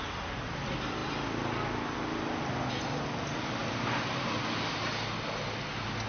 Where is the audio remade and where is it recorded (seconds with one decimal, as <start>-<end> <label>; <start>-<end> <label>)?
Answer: 0.0-6.1 recorded